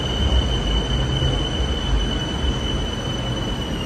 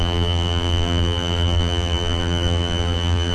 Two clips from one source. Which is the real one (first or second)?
first